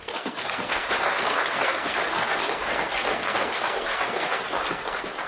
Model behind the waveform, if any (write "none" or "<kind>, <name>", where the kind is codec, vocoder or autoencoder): codec, SNAC